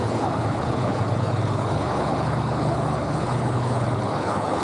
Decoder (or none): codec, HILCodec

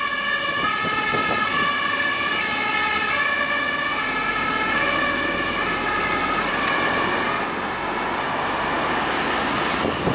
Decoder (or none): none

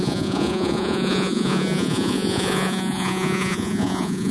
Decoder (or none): vocoder, Vocos